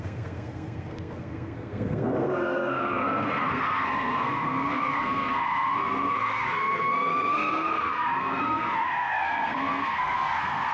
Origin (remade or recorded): remade